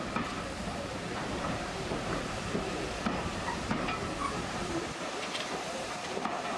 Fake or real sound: fake